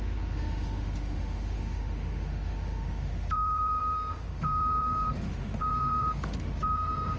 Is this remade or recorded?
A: remade